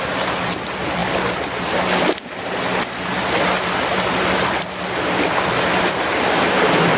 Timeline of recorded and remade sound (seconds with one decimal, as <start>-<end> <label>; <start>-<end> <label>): 0.0-7.0 recorded